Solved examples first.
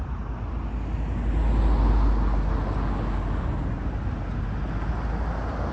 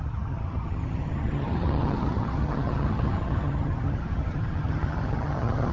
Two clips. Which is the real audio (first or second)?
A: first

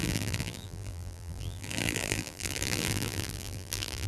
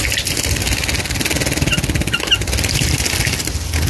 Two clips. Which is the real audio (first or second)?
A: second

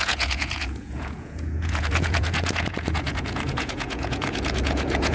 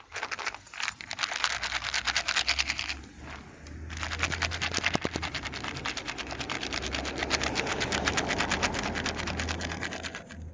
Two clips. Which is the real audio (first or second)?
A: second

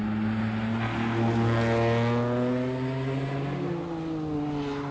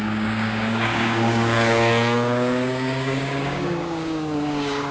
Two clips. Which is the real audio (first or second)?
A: first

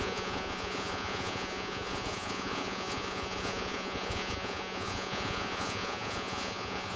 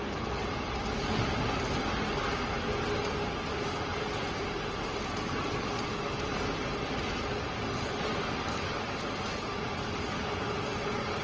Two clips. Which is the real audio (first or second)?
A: second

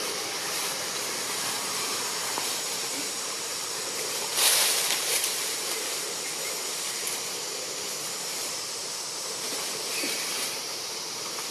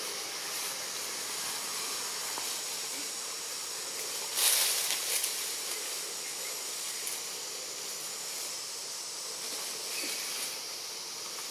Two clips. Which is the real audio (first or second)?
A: second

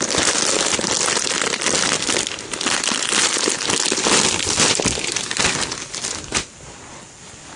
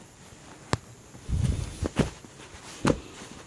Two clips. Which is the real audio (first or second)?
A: second